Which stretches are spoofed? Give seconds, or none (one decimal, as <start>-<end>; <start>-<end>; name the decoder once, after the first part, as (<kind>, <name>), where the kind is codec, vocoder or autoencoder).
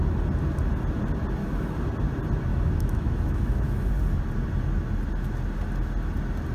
1.4-1.9 (autoencoder, DAC-VAE); 2.5-3.9